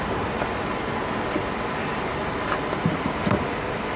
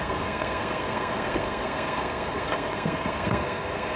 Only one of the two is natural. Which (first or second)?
first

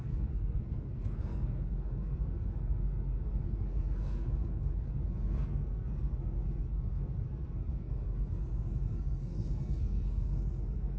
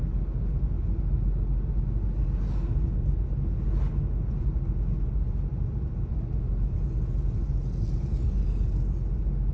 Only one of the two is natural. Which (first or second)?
second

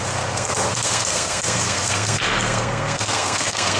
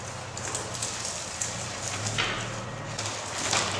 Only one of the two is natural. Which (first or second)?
second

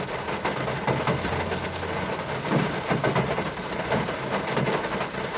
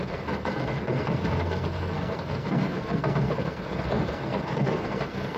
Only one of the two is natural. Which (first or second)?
first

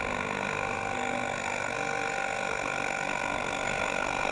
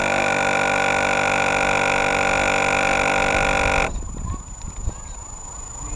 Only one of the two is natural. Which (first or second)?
second